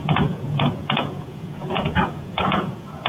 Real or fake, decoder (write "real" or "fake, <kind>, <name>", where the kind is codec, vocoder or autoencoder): fake, vocoder, Vocos